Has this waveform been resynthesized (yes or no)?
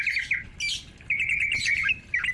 no